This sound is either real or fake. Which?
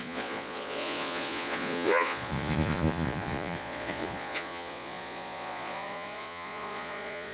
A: fake